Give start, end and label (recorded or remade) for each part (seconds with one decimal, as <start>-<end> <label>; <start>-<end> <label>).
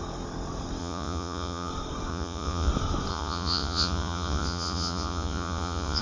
0.0-0.8 recorded; 0.8-1.7 remade; 1.7-2.1 recorded; 2.1-2.7 remade; 2.7-3.1 recorded; 3.1-6.0 remade